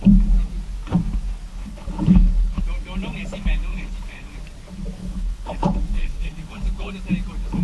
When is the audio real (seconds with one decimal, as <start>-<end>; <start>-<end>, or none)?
0.0-1.5; 2.6-3.7; 4.3-5.0; 6.9-7.6